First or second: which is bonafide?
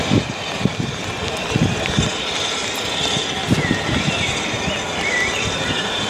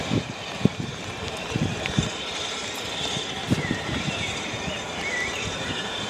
first